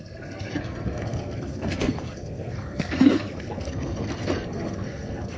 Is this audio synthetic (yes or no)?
yes